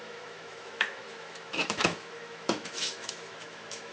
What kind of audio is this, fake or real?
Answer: fake